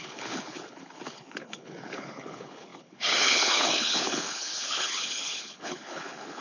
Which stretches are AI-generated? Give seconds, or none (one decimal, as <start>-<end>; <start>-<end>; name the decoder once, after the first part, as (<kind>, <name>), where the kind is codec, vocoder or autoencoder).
0.0-6.4 (codec, HILCodec)